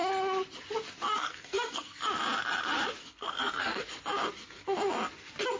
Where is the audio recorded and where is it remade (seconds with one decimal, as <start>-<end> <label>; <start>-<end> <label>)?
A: 0.0-1.1 recorded; 1.1-2.0 remade; 2.0-3.0 recorded; 3.0-3.8 remade; 3.8-5.6 recorded